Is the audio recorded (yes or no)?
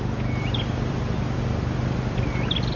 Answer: no